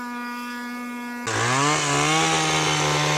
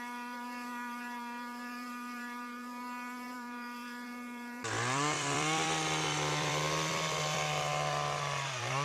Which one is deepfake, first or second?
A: second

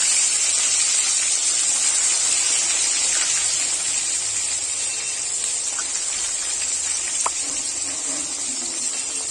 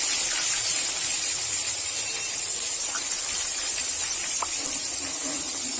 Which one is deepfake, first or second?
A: second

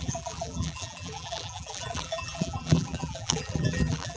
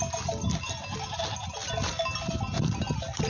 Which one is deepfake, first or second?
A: first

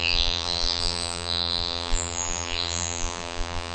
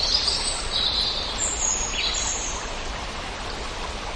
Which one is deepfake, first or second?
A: first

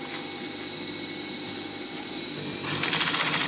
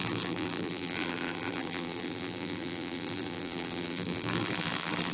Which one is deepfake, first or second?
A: second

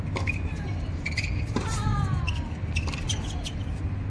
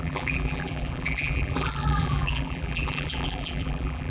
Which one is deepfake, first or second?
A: second